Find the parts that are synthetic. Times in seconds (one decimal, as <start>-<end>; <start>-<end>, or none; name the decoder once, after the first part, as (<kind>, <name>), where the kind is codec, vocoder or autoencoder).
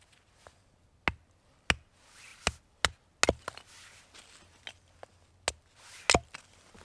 none